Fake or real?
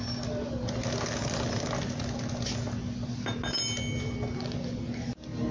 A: real